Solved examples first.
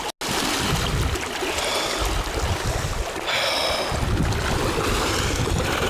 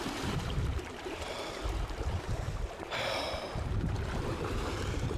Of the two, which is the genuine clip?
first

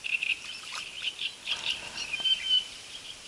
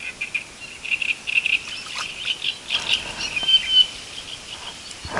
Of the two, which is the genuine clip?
second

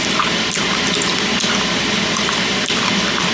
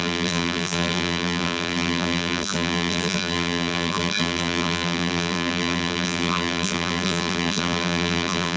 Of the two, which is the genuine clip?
first